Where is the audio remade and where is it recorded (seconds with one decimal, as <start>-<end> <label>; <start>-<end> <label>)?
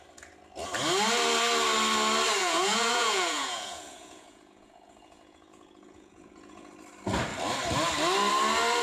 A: 0.0-2.4 recorded; 2.4-6.7 remade; 6.7-8.8 recorded